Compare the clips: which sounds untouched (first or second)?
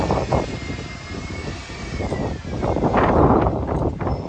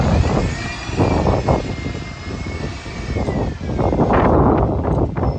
second